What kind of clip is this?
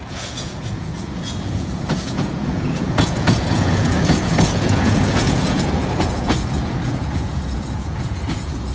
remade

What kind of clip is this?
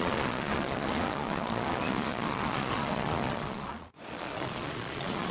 remade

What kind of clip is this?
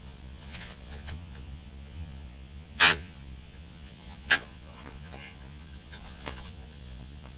remade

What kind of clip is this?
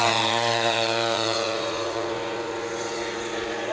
remade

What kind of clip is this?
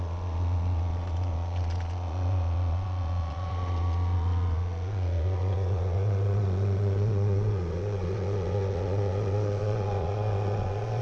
remade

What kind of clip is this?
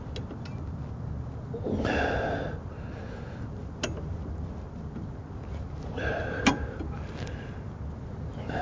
recorded